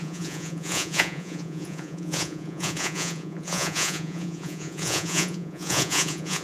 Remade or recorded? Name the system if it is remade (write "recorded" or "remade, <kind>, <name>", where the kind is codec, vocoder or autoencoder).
remade, vocoder, Vocos